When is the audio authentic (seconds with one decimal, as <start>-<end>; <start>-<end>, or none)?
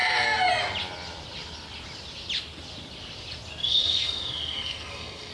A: 0.0-3.6